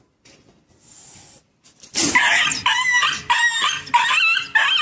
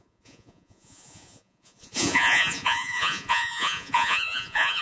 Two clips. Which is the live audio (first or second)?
first